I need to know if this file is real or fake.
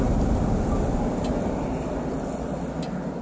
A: real